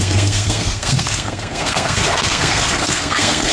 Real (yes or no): no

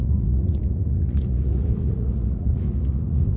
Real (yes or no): no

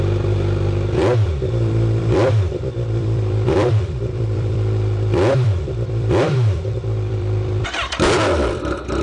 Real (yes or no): no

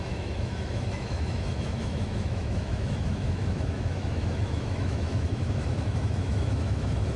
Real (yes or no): no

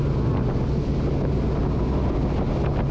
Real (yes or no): yes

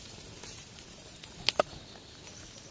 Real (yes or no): yes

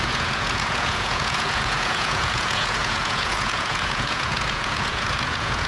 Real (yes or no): no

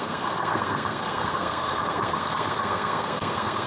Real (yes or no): no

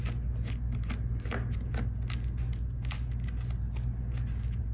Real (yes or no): yes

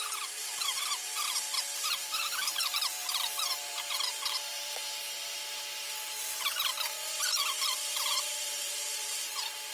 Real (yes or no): no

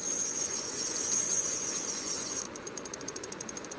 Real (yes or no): no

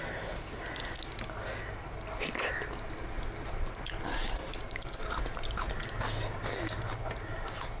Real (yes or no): yes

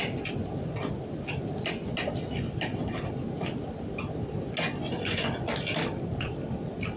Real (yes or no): yes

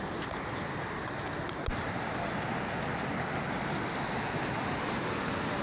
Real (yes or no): yes